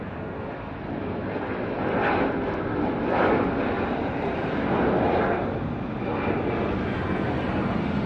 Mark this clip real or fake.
real